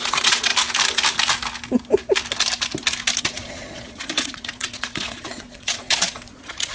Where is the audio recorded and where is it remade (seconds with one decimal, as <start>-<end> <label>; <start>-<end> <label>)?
0.0-0.5 remade; 0.5-3.2 recorded; 3.2-6.7 remade

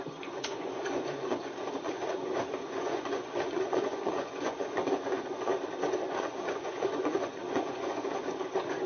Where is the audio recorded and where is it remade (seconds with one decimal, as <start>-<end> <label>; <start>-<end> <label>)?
0.0-5.5 remade; 5.5-6.0 recorded; 6.0-8.9 remade